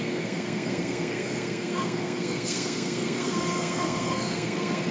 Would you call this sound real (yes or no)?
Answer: no